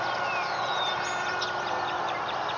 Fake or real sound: real